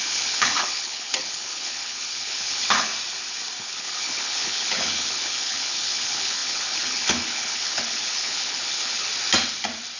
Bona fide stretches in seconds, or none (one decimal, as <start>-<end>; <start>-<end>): 2.9-3.6; 9.1-10.0